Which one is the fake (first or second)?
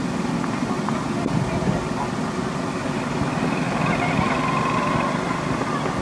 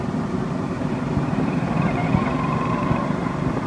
second